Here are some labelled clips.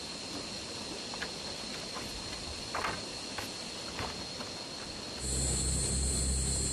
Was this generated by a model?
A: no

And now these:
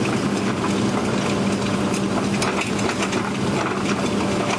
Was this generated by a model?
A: no